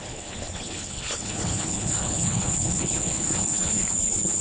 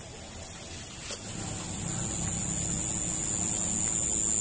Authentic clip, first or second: second